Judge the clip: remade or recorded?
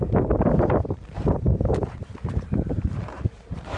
remade